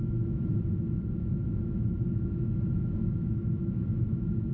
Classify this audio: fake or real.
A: fake